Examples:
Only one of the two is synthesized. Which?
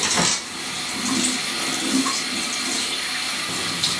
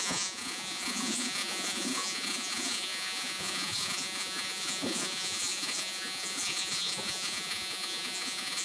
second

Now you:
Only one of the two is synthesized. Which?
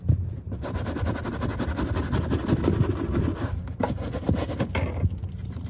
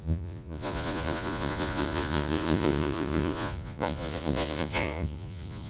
second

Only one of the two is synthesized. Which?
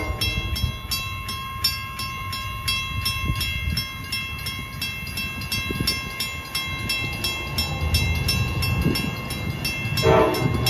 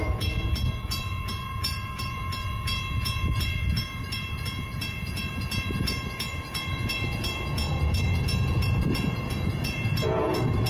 second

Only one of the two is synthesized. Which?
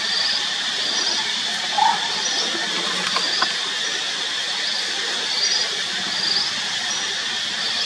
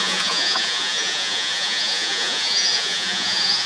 second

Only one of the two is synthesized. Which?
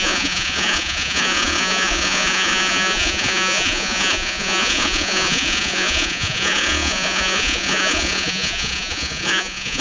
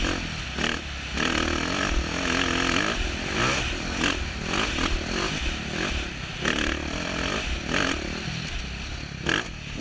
first